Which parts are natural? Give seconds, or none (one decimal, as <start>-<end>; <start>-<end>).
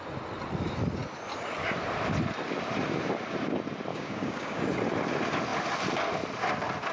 0.0-3.9; 4.6-6.9